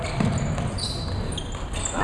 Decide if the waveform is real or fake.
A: real